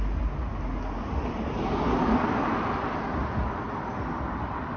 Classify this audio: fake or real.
real